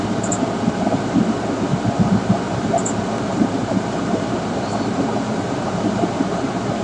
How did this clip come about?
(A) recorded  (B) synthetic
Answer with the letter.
B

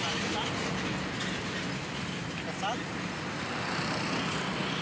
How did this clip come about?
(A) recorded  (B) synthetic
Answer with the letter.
A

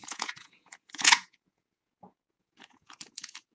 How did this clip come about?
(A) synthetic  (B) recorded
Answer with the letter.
A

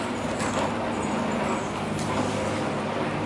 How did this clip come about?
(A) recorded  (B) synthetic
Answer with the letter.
A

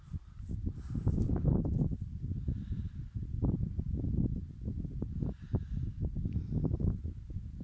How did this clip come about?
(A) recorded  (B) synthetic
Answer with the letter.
A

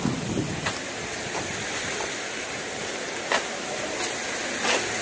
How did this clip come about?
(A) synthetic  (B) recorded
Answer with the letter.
B